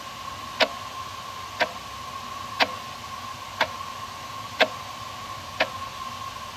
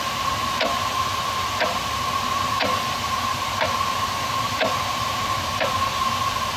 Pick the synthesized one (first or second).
second